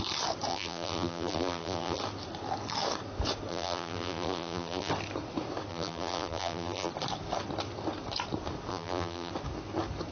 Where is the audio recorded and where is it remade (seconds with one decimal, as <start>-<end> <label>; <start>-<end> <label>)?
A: 0.0-0.5 recorded; 0.5-2.0 remade; 2.0-3.5 recorded; 3.5-4.9 remade; 4.9-5.7 recorded; 5.7-6.9 remade; 6.9-8.7 recorded; 8.7-9.3 remade; 9.3-10.1 recorded